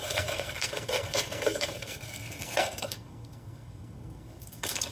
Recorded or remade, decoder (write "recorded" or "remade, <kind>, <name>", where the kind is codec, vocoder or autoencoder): remade, codec, SNAC